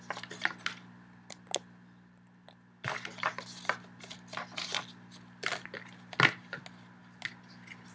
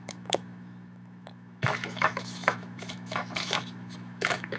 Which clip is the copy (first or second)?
second